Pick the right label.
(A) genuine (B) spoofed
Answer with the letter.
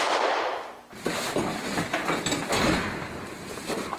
A